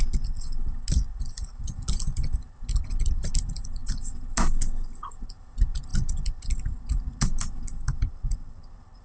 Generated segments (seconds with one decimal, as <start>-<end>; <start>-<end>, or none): none